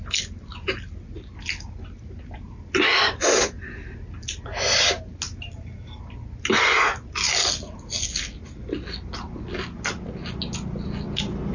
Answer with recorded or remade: recorded